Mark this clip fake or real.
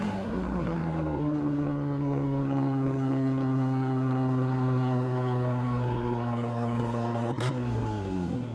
fake